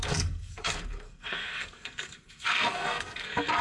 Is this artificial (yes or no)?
yes